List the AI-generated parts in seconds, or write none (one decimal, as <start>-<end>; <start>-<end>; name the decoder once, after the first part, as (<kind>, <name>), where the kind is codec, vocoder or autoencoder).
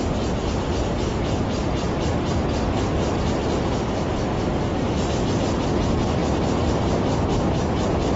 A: 6.2-6.9 (vocoder, BigVGAN v2)